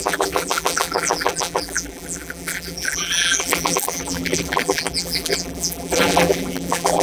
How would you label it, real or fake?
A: fake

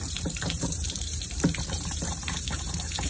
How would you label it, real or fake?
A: fake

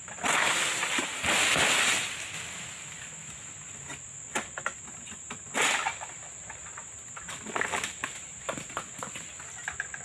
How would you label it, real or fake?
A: real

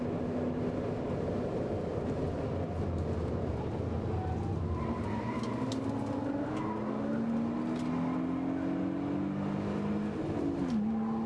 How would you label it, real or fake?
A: real